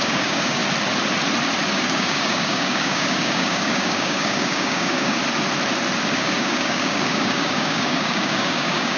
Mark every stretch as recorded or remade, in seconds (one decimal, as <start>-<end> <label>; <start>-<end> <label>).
0.0-0.6 remade; 0.6-1.7 recorded; 1.7-5.2 remade; 5.2-6.1 recorded; 6.1-9.0 remade